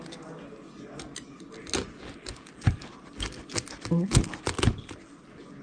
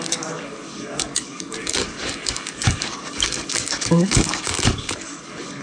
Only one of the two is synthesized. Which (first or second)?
second